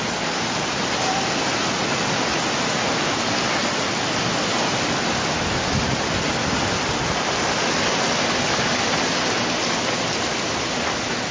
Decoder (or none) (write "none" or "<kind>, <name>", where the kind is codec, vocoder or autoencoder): none